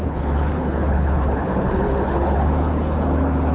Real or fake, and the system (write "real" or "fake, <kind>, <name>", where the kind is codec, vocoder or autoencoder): fake, codec, HILCodec